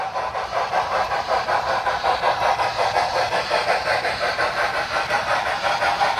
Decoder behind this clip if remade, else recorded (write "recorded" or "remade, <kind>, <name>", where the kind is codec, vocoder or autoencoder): remade, vocoder, BigVGAN v2